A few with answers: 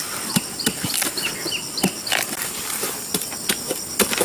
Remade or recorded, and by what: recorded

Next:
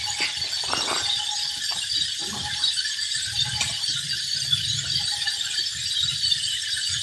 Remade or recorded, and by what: recorded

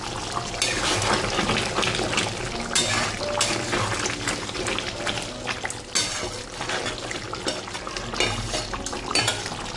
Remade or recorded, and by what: recorded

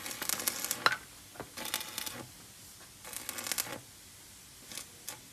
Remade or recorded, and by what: recorded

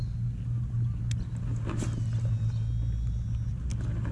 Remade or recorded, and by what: recorded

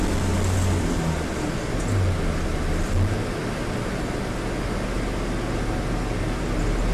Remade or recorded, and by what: recorded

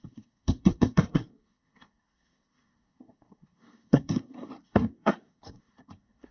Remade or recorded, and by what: remade, codec, SNAC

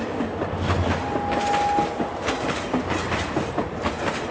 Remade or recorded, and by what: recorded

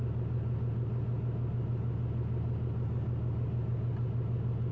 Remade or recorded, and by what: recorded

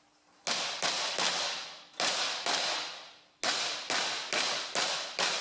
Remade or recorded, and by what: recorded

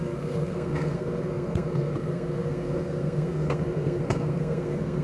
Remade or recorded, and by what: remade, codec, SNAC